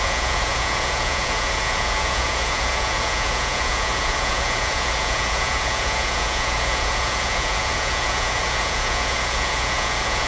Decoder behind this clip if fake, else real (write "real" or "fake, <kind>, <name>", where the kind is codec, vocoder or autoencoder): fake, vocoder, Vocos